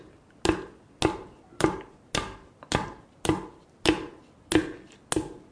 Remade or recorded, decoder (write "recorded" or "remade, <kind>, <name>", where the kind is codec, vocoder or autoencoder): recorded